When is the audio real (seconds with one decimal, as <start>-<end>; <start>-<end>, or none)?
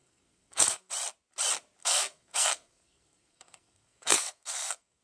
0.9-1.8